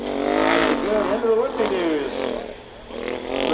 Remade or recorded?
recorded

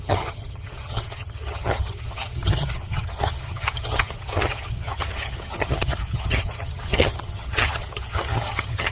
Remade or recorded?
remade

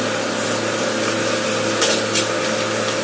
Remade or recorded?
recorded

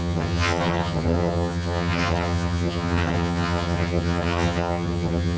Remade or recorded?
remade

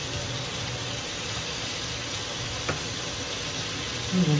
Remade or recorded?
recorded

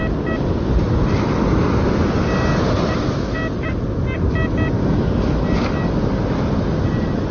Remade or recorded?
recorded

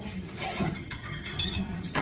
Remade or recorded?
remade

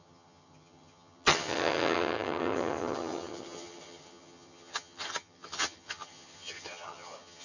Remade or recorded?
remade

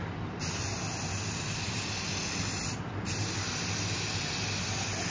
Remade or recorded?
recorded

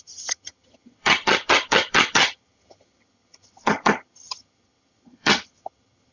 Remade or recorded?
remade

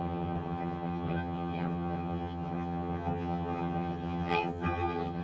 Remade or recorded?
remade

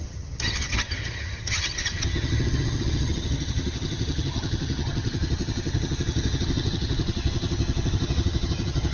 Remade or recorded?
remade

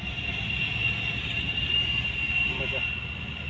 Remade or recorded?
recorded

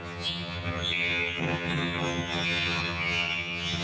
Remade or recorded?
remade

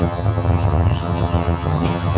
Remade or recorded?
remade